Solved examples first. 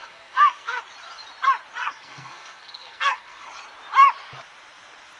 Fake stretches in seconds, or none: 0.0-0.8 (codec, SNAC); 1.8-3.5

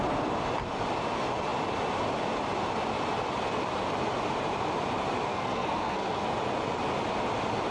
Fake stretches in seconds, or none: 5.3-6.3 (codec, SNAC)

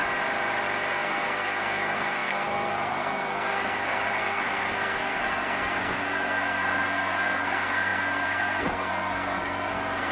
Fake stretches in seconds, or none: 0.9-10.1 (codec, SNAC)

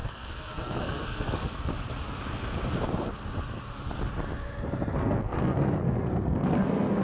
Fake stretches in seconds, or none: 0.0-1.7 (codec, SNAC); 5.0-7.0

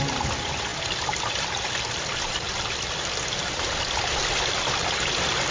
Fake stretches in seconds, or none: none